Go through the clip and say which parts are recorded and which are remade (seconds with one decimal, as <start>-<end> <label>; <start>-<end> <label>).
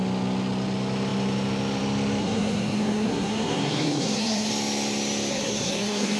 0.0-2.2 recorded; 2.2-4.5 remade; 4.5-5.3 recorded; 5.3-6.2 remade